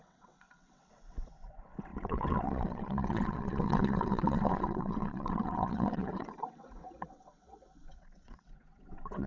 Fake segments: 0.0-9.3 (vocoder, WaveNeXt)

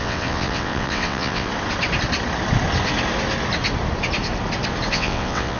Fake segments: 0.0-1.5 (vocoder, WaveNeXt); 4.9-5.6

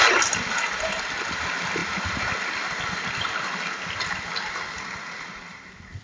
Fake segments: none

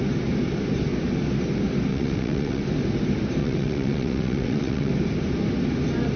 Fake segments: 1.9-2.6 (vocoder, WaveNeXt); 3.4-4.9